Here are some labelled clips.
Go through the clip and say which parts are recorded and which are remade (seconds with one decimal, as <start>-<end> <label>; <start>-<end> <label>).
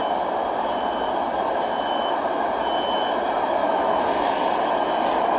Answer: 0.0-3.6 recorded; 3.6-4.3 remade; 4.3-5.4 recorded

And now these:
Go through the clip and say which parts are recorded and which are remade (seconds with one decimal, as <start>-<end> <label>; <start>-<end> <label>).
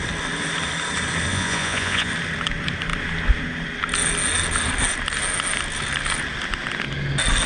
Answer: 0.0-1.3 recorded; 1.3-2.1 remade; 2.1-7.5 recorded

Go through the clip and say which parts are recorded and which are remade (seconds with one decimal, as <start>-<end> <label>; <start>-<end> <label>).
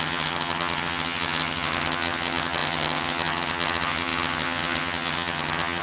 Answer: 0.0-5.8 remade